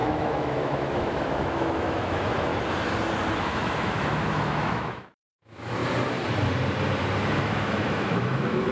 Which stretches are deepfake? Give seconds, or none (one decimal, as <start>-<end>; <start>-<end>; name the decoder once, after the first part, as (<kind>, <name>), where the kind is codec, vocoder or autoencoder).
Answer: 0.0-2.5 (autoencoder, DAC-VAE); 3.4-5.8; 7.4-8.7